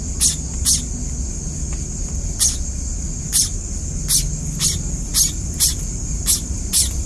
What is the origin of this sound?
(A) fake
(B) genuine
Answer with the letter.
B